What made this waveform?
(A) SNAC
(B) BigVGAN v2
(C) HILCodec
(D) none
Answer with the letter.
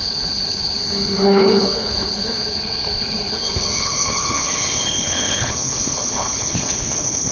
C